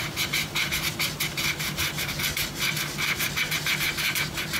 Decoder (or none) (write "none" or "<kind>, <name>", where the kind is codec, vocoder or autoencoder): vocoder, BigVGAN v2